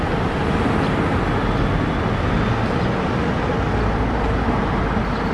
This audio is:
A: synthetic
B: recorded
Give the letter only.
B